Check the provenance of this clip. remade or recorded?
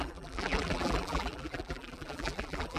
remade